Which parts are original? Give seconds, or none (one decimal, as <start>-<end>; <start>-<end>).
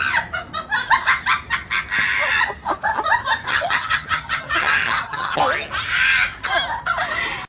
0.0-3.5; 5.4-7.5